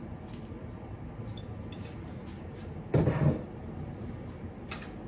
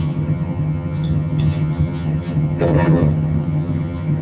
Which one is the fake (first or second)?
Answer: second